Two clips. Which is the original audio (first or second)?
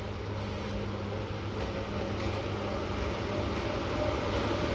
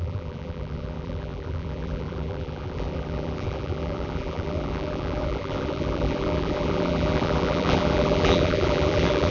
first